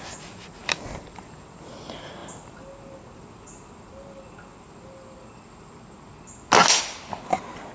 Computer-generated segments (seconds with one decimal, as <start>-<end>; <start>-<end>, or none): none